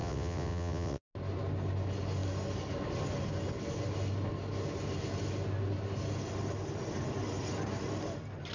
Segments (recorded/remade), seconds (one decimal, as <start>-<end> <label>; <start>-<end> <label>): 0.0-1.0 remade; 1.0-8.5 recorded